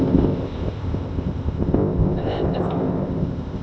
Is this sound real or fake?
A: fake